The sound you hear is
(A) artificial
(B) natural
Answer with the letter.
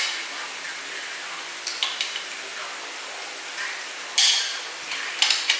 B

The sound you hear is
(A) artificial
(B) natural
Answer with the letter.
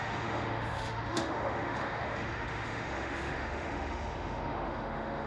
A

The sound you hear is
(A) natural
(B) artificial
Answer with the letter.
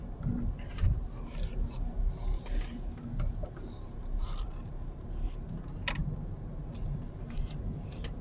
A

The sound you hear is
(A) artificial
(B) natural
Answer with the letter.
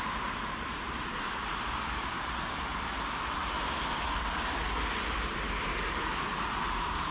A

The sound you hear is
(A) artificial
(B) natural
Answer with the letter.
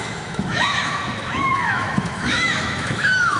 A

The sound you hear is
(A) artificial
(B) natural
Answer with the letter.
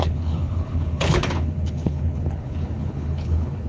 A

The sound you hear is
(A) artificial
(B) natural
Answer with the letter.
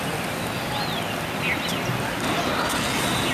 B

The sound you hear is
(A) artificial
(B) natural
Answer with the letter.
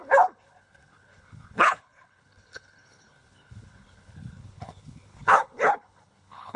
A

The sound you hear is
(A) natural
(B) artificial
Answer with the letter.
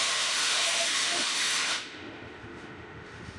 B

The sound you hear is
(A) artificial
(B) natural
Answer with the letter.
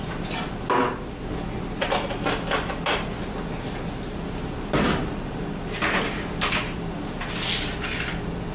B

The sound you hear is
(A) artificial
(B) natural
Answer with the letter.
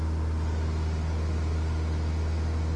B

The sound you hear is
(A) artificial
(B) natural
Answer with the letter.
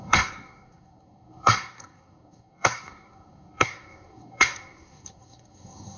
A